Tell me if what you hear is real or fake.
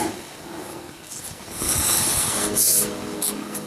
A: fake